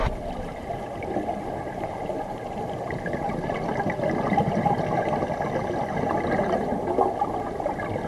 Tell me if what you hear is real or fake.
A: real